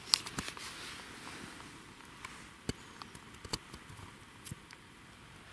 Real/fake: real